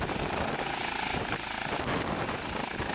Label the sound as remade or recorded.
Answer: recorded